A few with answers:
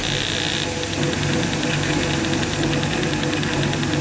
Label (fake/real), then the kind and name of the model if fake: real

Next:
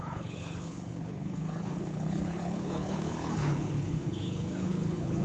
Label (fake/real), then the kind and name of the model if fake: fake, codec, HILCodec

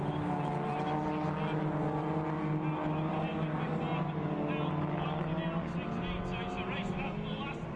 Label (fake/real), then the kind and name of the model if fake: real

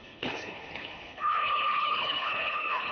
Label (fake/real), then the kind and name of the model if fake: fake, codec, HILCodec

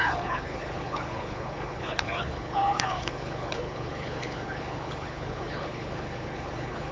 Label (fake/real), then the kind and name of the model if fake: fake, codec, HILCodec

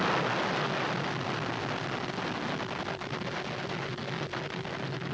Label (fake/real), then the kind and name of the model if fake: real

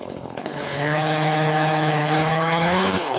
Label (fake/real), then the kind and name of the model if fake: fake, codec, HILCodec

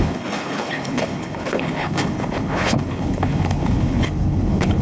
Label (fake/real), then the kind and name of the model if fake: fake, codec, HILCodec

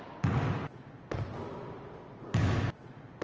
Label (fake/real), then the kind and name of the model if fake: real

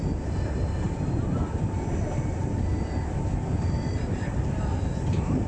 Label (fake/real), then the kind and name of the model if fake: real